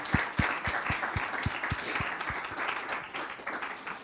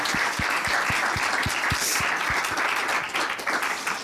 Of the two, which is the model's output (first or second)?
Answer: second